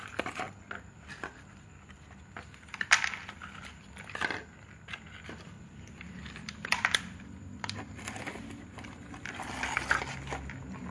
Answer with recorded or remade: recorded